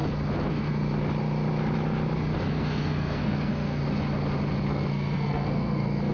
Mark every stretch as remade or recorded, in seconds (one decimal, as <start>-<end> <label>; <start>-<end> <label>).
0.0-2.5 recorded; 2.5-3.8 remade; 3.8-4.7 recorded; 4.7-6.1 remade